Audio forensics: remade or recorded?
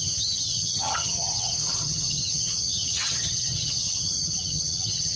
remade